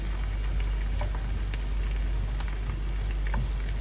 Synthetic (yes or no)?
no